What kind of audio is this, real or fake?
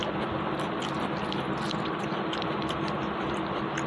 real